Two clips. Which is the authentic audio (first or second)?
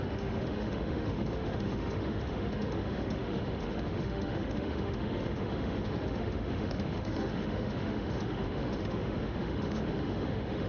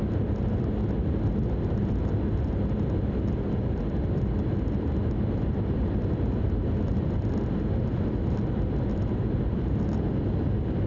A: second